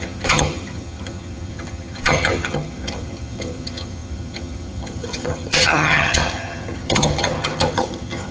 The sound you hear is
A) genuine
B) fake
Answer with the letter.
B